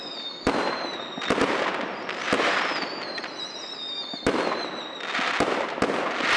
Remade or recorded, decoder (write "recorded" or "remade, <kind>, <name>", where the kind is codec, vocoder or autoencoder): recorded